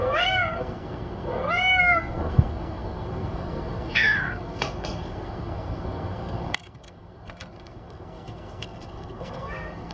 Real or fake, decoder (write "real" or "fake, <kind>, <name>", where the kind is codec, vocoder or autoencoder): fake, codec, SNAC